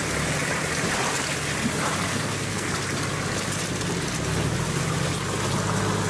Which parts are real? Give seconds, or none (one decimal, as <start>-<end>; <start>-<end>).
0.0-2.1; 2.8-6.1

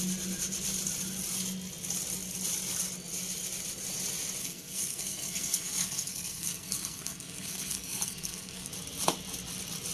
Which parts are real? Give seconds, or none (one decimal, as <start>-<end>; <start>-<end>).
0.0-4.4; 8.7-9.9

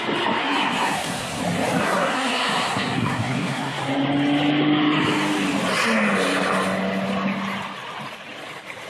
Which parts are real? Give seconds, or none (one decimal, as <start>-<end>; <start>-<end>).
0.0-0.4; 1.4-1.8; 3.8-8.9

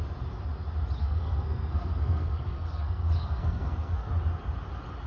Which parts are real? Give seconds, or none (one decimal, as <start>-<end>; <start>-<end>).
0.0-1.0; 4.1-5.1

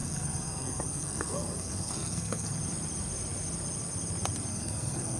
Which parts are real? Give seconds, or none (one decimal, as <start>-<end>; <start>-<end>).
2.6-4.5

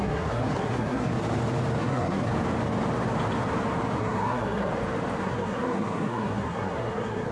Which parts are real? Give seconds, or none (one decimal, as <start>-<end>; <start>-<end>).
1.1-1.8; 2.3-4.0; 4.7-5.2

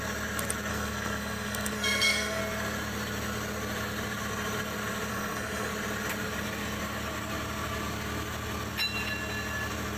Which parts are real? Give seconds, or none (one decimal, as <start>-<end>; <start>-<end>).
0.0-0.7; 2.4-5.1; 5.7-10.0